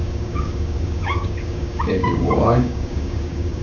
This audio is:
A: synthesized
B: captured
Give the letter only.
A